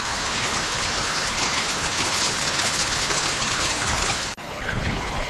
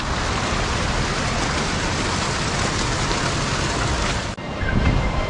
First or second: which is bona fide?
second